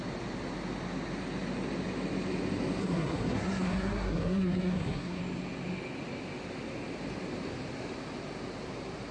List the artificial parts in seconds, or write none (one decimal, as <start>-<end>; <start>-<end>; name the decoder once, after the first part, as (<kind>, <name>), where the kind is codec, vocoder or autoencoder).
2.8-5.2 (codec, SNAC)